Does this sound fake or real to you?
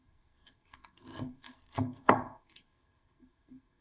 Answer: fake